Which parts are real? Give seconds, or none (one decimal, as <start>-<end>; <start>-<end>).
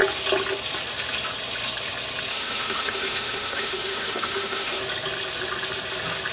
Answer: 0.0-2.3; 4.8-6.3